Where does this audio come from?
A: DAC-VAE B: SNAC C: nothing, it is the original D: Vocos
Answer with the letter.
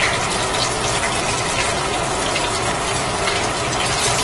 C